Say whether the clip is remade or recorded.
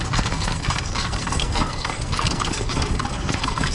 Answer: remade